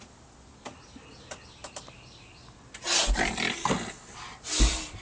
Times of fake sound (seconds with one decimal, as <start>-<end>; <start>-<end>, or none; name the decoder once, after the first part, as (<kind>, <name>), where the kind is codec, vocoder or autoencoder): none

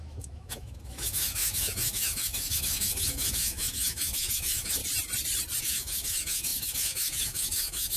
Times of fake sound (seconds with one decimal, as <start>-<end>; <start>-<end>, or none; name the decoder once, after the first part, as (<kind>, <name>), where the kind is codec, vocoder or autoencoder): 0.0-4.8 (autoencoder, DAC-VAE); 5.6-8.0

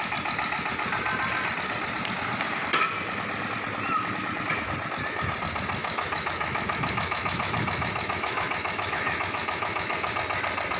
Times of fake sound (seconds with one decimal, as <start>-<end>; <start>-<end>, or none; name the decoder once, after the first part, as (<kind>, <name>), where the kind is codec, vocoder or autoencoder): 5.8-10.1 (autoencoder, DAC-VAE)

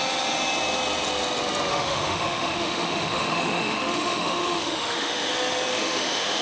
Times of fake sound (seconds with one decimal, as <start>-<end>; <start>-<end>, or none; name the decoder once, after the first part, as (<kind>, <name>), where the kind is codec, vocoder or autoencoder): 1.7-5.3 (autoencoder, DAC-VAE); 5.7-6.4

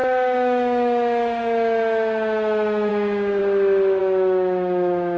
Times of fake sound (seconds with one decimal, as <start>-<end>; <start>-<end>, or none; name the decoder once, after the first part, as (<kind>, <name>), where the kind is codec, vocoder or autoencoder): 0.0-3.4 (autoencoder, DAC-VAE); 4.0-5.2

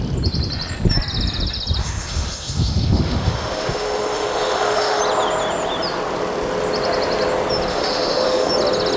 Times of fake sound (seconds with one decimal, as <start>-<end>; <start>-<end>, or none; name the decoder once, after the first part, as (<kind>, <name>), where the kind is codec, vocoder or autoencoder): 1.8-5.0 (autoencoder, DAC-VAE); 7.7-8.5